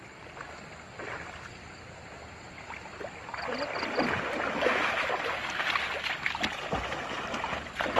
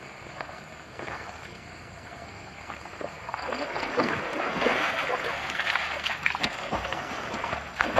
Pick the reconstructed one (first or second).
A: second